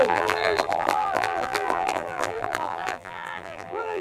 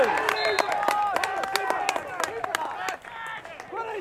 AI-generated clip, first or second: first